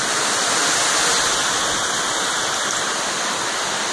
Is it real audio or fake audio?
real